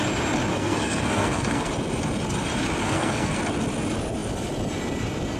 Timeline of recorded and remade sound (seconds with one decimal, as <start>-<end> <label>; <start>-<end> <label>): 0.0-0.5 recorded; 0.5-1.7 remade; 1.7-2.8 recorded; 2.8-3.4 remade; 3.4-5.4 recorded